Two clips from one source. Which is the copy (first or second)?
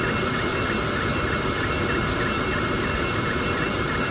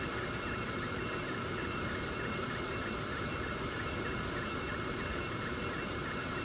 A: second